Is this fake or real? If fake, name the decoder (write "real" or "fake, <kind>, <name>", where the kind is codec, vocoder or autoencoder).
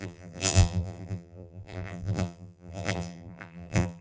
fake, vocoder, BigVGAN v2